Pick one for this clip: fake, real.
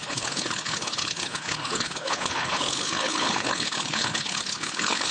fake